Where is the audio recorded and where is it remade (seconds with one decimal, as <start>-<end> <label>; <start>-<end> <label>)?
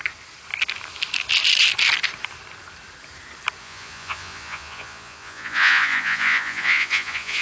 0.0-3.6 recorded; 3.6-7.4 remade